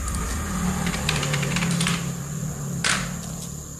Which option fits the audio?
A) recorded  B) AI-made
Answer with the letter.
A